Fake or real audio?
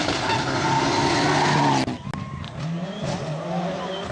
real